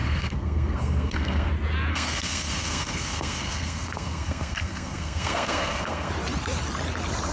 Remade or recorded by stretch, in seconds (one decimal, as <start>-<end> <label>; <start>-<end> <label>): 0.0-1.5 remade; 1.5-1.9 recorded; 1.9-6.1 remade; 6.1-7.3 recorded